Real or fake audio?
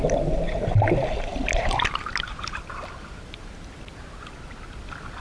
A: real